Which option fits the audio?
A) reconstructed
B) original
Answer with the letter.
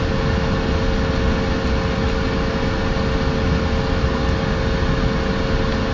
B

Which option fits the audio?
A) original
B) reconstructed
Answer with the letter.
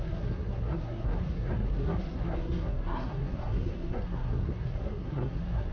B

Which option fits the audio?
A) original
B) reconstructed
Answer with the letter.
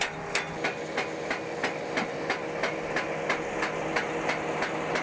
A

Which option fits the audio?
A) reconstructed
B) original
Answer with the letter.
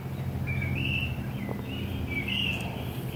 B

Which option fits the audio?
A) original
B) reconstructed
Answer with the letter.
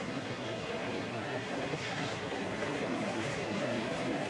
B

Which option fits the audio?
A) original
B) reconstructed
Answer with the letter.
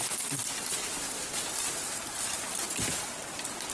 A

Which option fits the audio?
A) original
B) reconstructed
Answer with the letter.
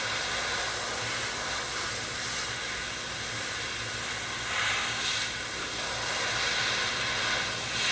A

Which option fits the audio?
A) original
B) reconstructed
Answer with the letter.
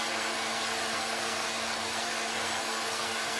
B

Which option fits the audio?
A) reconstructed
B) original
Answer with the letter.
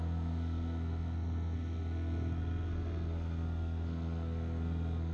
A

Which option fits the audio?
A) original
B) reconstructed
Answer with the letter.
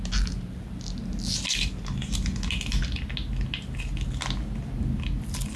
A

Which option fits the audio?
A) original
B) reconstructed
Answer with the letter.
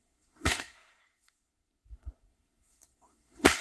B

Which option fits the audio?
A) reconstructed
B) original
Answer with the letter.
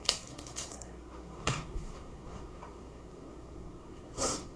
A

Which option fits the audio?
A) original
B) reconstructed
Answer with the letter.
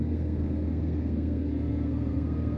B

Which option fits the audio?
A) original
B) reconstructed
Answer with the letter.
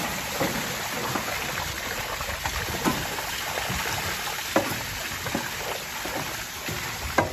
A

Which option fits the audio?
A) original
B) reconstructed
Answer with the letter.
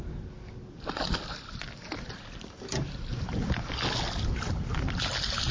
A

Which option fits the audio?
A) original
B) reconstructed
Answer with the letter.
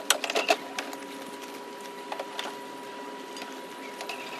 A